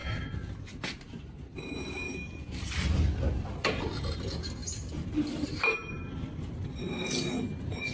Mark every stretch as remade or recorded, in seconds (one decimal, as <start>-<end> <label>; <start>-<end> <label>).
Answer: 0.0-7.9 recorded